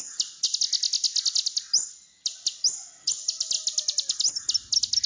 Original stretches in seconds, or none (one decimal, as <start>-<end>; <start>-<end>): 0.0-5.1